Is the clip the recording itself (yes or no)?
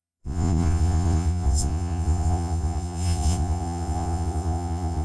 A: no